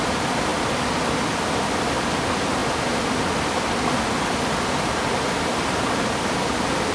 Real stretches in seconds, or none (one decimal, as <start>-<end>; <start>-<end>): 0.0-0.5; 1.9-6.9